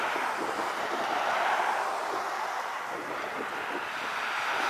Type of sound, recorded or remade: remade